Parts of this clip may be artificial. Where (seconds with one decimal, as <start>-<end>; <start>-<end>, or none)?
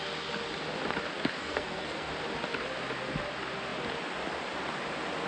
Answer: 1.4-2.1